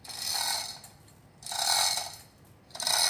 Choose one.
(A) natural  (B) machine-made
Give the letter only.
A